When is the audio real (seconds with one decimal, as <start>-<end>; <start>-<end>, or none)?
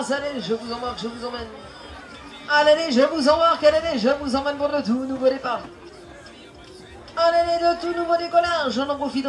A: 0.0-7.8; 8.5-9.3